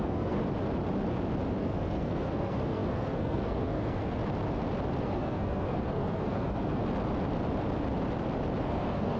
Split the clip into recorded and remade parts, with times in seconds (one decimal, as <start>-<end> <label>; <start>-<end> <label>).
0.0-0.4 remade; 0.4-1.6 recorded; 1.6-4.2 remade; 4.2-5.0 recorded; 5.0-6.8 remade; 6.8-8.6 recorded; 8.6-9.2 remade